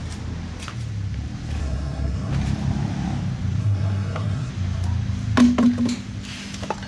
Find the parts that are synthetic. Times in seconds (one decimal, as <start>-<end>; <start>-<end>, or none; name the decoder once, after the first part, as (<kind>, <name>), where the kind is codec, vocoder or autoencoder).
1.6-2.3 (codec, SNAC); 3.6-4.5